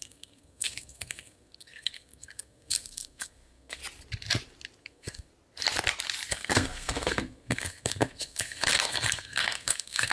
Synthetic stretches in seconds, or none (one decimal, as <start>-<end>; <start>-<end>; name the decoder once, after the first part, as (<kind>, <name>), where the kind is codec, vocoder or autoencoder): 0.0-3.8 (codec, SNAC); 4.8-5.3; 6.3-10.1